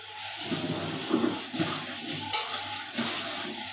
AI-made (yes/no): no